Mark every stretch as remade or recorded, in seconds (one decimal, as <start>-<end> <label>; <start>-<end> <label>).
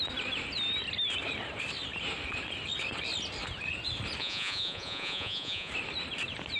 0.0-4.2 recorded; 4.2-5.7 remade; 5.7-6.6 recorded